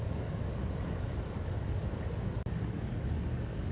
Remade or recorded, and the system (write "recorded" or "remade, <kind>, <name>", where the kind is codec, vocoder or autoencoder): remade, codec, DAC